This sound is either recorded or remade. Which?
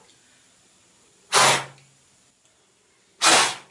recorded